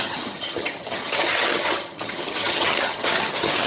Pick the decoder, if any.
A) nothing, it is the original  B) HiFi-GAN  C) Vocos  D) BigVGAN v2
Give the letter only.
B